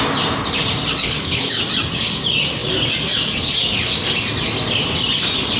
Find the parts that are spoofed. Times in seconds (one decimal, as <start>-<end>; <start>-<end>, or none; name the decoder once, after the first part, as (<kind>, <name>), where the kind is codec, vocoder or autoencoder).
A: 1.0-1.6 (codec, HILCodec)